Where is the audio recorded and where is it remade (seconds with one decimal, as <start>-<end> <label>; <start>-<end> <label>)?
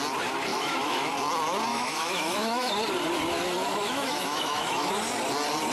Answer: 0.0-0.5 recorded; 0.5-1.1 remade; 1.1-1.7 recorded; 1.7-2.7 remade; 2.7-3.7 recorded; 3.7-4.9 remade; 4.9-5.7 recorded